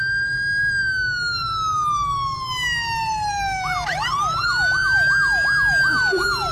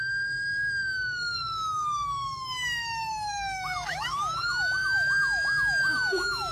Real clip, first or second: first